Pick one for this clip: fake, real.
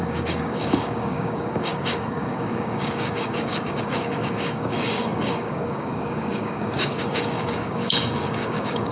fake